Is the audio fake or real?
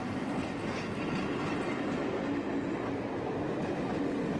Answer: real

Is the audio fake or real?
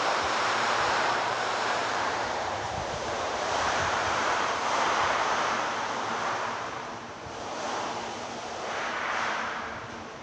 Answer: fake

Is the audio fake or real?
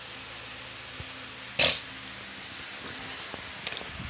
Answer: real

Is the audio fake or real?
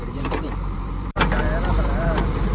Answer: fake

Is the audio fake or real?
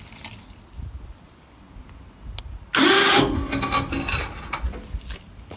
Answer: real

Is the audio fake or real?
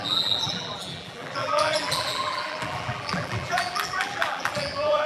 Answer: fake